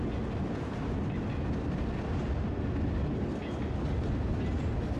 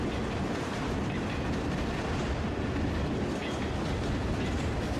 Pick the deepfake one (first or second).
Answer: second